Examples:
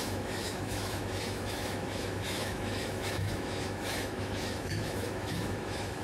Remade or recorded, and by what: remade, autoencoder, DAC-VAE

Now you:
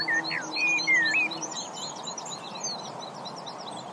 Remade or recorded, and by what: recorded